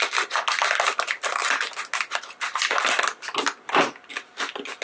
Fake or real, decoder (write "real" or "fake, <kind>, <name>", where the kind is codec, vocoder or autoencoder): real